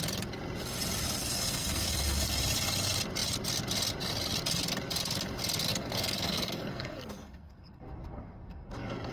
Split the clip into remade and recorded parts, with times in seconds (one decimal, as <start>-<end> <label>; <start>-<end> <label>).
0.0-1.2 recorded; 1.2-2.3 remade; 2.3-5.7 recorded; 5.7-9.1 remade